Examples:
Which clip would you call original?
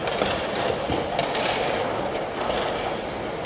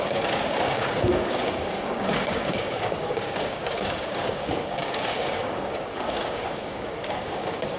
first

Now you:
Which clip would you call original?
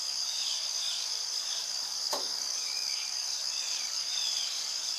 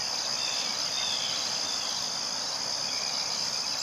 second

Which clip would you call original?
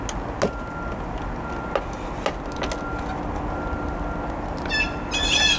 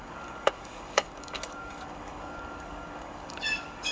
first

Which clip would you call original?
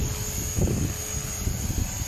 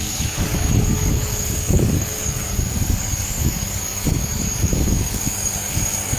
first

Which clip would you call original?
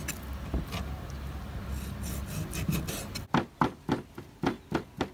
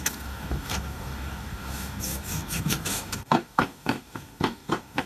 first